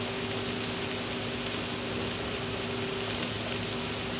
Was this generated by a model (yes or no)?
no